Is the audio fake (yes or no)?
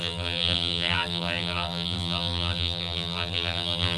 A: yes